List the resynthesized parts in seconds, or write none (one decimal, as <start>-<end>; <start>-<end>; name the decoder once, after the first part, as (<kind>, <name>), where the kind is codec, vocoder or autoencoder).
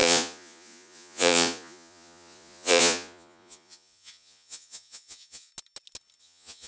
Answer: 0.0-5.5 (vocoder, Vocos); 6.2-6.7